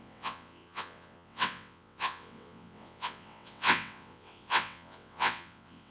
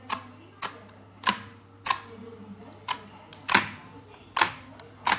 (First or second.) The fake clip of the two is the first